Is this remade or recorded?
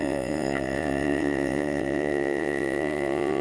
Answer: remade